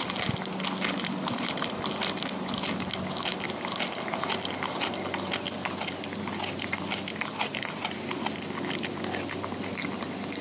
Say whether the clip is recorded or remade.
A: recorded